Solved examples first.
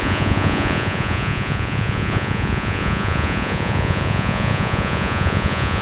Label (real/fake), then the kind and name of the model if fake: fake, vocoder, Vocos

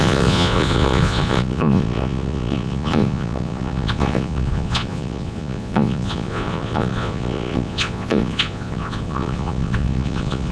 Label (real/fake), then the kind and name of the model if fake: fake, vocoder, Vocos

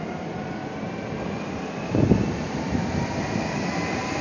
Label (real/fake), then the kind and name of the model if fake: real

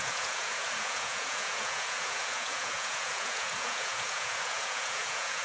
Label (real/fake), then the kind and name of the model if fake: fake, vocoder, Vocos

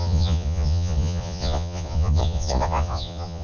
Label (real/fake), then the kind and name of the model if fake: fake, vocoder, Vocos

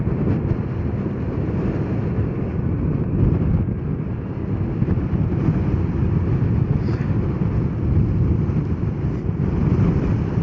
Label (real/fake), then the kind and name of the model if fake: real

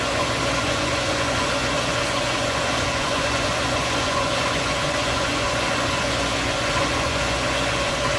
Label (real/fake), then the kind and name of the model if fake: fake, vocoder, Vocos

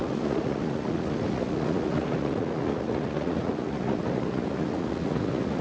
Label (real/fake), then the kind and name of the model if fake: fake, vocoder, Vocos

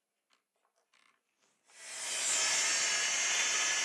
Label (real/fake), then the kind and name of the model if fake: real